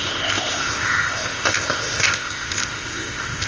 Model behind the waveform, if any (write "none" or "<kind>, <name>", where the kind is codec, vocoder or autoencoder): codec, ZipCodec